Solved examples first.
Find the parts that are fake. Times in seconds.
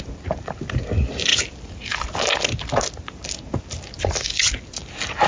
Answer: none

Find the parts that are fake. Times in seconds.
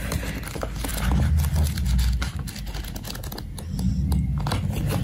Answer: none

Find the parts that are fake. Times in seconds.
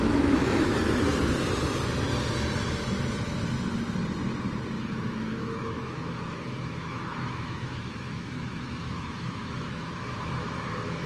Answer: 0.0-0.7 (autoencoder, DAC-VAE); 4.8-11.1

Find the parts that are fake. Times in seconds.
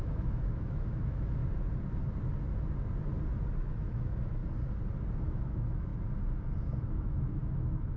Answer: 0.0-1.4 (autoencoder, DAC-VAE); 3.6-4.4; 5.2-5.9; 6.6-8.0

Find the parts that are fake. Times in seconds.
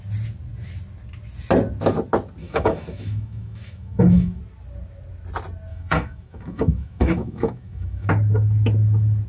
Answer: 2.4-4.4 (autoencoder, DAC-VAE); 5.7-8.1